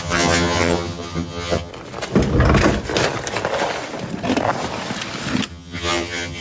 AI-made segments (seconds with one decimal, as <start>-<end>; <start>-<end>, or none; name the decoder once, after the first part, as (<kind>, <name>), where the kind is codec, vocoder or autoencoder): 0.0-1.7 (vocoder, HiFi-GAN); 5.5-6.4